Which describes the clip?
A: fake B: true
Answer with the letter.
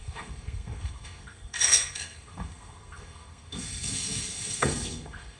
A